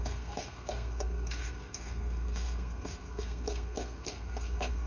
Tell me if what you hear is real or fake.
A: fake